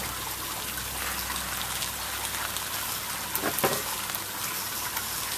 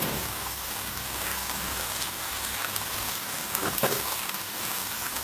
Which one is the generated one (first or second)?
second